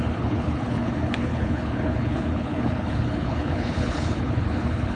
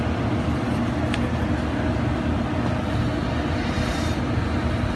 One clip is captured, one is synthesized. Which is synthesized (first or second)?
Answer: first